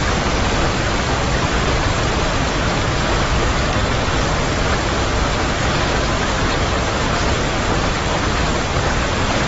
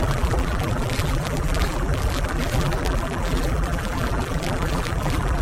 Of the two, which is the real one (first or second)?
first